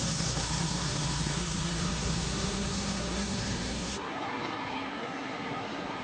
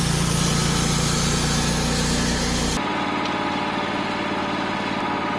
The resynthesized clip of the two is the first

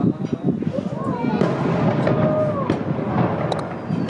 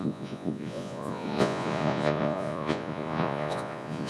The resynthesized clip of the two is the second